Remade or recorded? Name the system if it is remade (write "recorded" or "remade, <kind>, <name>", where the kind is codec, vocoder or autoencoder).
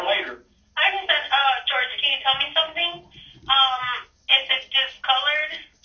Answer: recorded